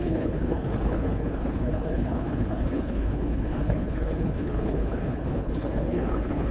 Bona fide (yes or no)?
no